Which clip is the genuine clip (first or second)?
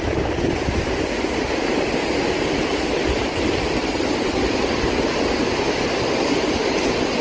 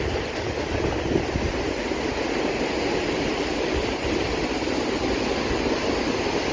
second